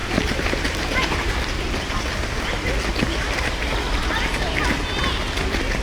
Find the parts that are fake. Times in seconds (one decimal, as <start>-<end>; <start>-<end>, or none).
0.0-1.3